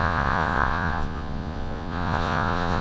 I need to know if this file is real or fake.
fake